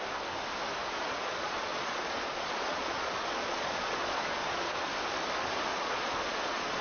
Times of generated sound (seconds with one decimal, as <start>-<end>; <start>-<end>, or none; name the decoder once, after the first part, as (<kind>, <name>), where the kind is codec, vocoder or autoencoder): 0.8-4.9 (vocoder, Vocos); 5.7-6.8